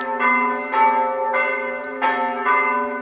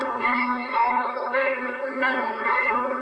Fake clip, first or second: second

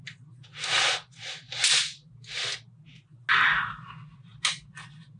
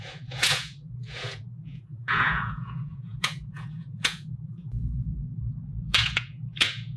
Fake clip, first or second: second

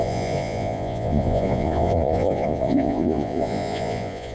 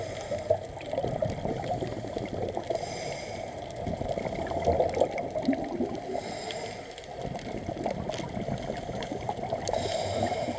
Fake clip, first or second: first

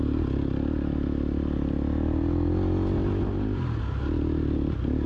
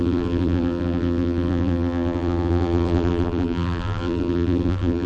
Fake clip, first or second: second